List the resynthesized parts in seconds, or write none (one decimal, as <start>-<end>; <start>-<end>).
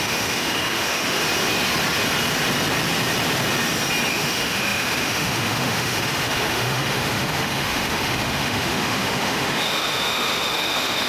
0.0-1.2; 4.1-11.1